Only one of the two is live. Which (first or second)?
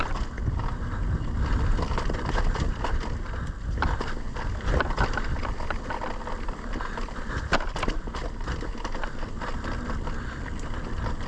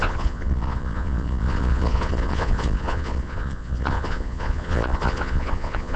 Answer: first